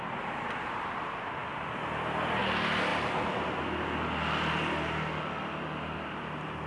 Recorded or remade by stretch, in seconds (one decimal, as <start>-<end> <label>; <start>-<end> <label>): 0.0-6.7 recorded

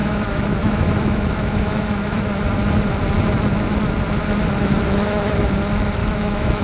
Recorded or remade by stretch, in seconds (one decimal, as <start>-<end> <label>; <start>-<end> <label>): 0.0-2.2 remade; 2.2-4.6 recorded; 4.6-5.5 remade; 5.5-6.0 recorded; 6.0-6.6 remade

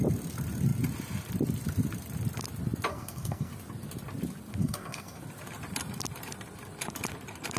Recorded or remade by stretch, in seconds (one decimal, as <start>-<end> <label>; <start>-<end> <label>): 0.0-2.9 recorded; 2.9-3.5 remade; 3.5-4.6 recorded; 4.6-5.2 remade; 5.2-7.6 recorded

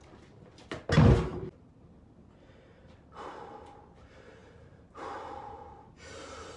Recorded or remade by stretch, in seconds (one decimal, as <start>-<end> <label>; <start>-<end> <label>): 0.0-1.3 recorded; 1.3-1.9 remade; 1.9-4.4 recorded; 4.4-6.6 remade

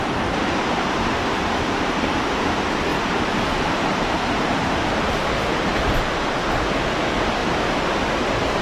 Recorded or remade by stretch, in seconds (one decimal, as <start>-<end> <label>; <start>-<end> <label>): 0.0-2.9 remade; 2.9-3.5 recorded; 3.5-5.7 remade; 5.7-7.0 recorded; 7.0-7.4 remade; 7.4-7.9 recorded; 7.9-8.6 remade

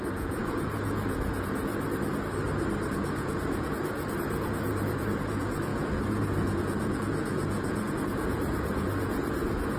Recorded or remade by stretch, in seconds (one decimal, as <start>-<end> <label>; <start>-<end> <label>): 0.0-1.7 remade; 1.7-2.9 recorded; 2.9-9.8 remade